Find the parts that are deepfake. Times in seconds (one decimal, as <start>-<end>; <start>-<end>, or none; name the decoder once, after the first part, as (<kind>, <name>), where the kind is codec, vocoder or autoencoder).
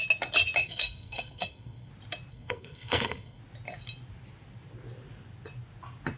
0.6-1.9 (codec, SNAC); 2.3-3.4